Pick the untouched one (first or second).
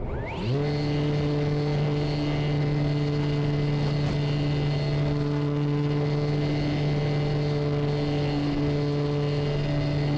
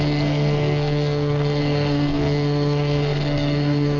first